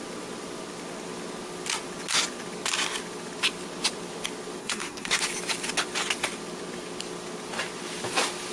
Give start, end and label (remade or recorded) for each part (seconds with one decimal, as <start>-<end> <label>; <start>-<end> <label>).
0.0-4.6 recorded; 4.6-5.2 remade; 5.2-8.5 recorded